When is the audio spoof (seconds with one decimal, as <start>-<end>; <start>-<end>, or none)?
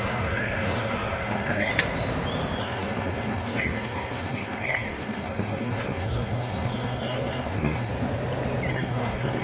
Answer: 0.0-1.7; 2.6-7.9; 8.7-9.4